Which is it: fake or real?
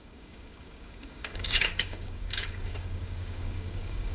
fake